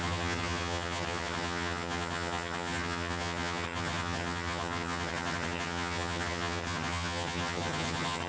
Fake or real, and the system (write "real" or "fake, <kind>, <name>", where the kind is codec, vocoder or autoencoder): fake, vocoder, HiFi-GAN